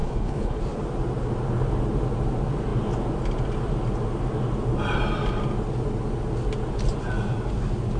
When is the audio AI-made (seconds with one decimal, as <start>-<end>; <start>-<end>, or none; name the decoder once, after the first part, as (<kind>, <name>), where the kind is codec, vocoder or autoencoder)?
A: 0.0-0.6 (codec, HILCodec)